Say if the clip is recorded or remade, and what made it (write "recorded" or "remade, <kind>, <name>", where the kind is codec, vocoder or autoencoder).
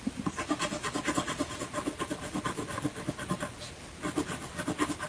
recorded